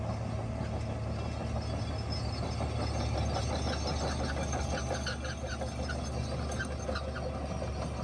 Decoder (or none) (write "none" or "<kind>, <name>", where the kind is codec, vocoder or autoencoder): none